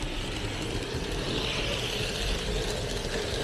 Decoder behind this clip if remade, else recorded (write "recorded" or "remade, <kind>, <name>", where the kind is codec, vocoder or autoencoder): recorded